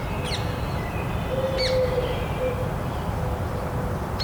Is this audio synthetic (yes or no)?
no